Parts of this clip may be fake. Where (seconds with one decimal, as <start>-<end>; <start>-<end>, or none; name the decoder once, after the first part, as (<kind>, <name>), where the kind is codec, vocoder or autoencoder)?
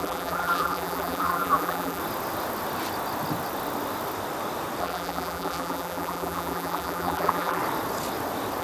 0.0-2.0 (vocoder, BigVGAN v2); 4.8-7.6